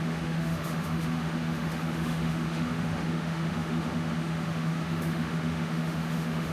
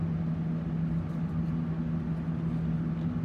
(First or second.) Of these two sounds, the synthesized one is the first